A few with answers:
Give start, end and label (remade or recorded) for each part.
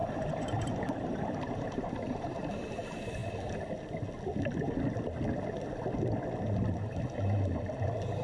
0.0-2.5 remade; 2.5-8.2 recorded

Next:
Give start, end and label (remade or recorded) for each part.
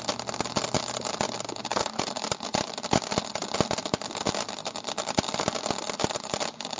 0.0-1.7 recorded; 1.7-2.2 remade; 2.2-6.8 recorded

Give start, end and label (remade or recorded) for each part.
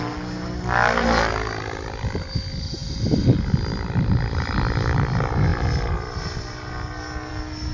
0.0-2.8 recorded; 2.8-3.4 remade; 3.4-7.7 recorded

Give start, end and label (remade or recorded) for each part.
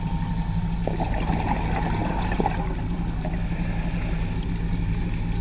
0.0-5.4 recorded